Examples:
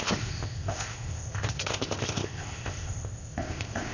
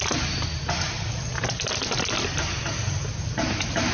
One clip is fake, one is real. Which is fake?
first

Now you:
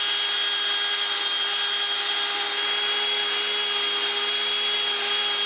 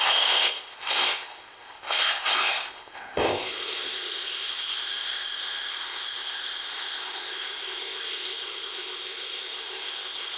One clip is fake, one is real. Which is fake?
second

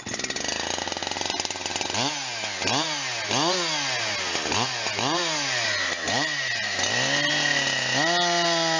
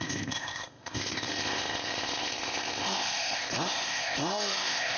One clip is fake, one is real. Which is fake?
second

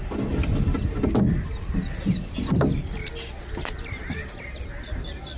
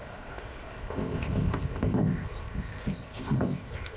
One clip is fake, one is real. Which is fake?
second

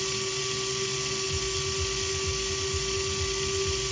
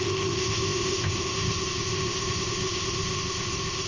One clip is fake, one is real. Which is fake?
second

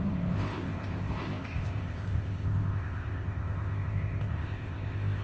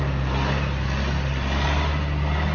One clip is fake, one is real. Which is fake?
first